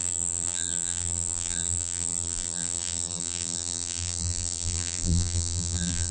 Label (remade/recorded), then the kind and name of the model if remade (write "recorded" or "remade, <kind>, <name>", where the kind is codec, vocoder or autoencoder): remade, vocoder, BigVGAN v2